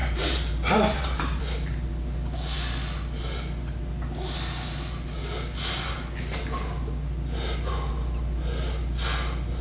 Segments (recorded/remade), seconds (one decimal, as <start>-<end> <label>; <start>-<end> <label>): 0.0-1.4 remade; 1.4-9.6 recorded